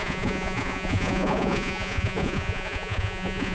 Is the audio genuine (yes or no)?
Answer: no